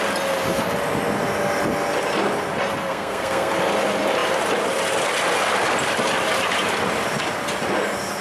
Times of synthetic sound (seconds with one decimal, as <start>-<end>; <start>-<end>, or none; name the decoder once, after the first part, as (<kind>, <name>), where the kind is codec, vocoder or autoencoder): 2.9-3.5 (codec, SNAC)